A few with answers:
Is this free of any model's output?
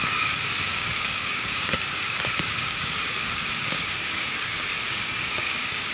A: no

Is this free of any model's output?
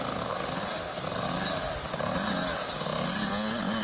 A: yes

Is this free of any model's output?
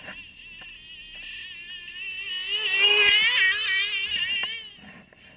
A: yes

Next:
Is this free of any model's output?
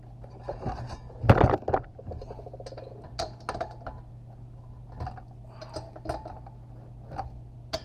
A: yes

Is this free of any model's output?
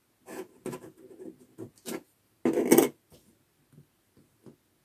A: yes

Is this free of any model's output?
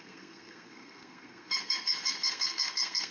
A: no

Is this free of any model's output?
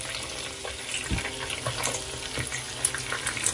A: yes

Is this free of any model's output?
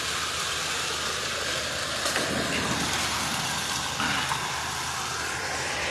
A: yes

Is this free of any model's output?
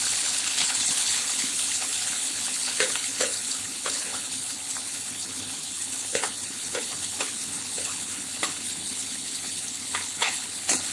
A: no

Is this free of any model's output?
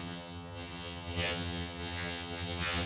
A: no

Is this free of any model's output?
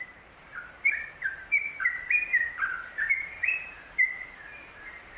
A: no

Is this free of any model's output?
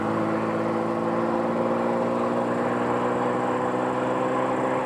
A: yes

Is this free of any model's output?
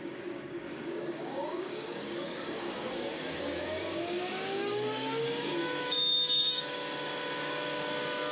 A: no